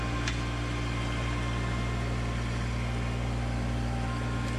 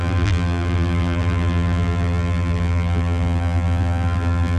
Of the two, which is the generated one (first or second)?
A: second